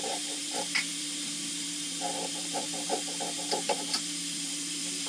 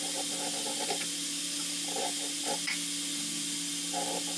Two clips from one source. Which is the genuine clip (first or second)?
second